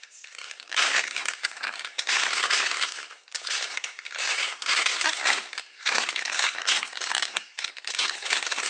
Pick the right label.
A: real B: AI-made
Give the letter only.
B